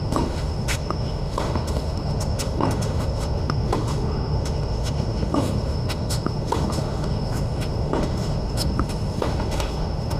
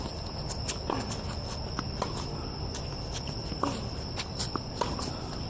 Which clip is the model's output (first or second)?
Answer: first